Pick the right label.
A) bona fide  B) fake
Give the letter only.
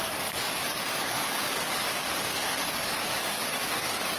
B